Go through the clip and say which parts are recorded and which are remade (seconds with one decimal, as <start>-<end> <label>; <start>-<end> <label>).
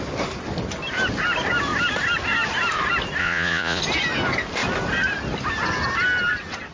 0.0-3.2 recorded; 3.2-3.8 remade; 3.8-6.7 recorded